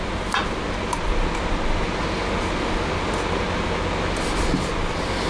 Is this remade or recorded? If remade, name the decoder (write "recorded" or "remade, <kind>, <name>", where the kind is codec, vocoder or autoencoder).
recorded